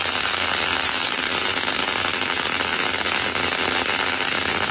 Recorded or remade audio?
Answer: recorded